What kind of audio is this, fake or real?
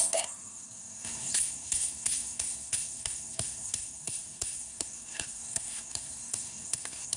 fake